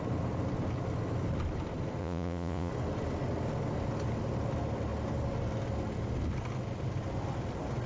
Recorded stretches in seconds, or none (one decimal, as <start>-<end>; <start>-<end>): 0.0-2.0; 2.7-7.9